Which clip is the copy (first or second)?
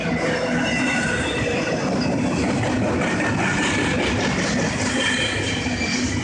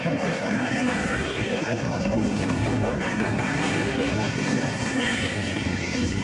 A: second